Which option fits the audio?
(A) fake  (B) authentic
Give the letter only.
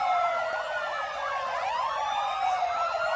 A